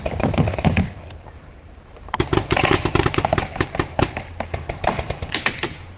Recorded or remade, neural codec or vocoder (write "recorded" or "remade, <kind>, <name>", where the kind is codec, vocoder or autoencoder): remade, vocoder, BigVGAN v2